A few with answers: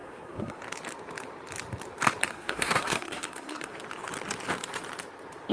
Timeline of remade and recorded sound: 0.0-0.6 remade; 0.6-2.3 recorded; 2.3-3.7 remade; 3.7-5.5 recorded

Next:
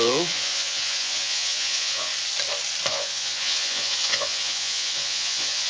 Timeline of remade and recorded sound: 0.0-2.1 remade; 2.1-2.9 recorded; 2.9-5.7 remade

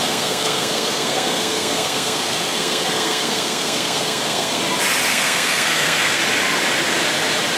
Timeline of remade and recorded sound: 0.0-4.6 remade; 4.6-5.1 recorded; 5.1-6.2 remade; 6.2-7.6 recorded

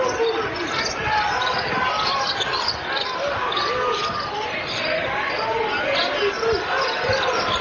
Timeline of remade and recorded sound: 0.0-7.6 recorded